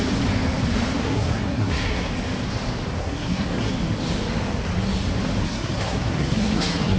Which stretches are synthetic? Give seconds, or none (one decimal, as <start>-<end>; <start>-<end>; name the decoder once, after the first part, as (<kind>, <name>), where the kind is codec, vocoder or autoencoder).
1.0-2.1 (codec, SNAC); 3.0-3.7; 5.4-7.0